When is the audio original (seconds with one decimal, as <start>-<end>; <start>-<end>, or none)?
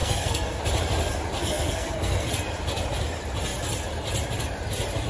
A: 0.6-1.4; 2.3-5.1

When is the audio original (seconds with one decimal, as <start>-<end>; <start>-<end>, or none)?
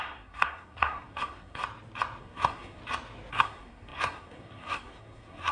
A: 1.6-2.2; 2.8-3.3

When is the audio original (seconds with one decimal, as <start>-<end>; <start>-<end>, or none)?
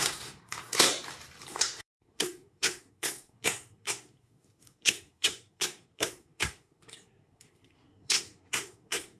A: 0.9-1.5